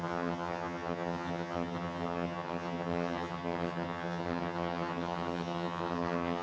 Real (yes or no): no